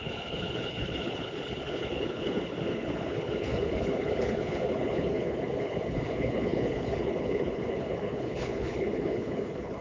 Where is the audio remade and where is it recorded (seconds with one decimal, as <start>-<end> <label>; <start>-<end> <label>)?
0.0-9.8 remade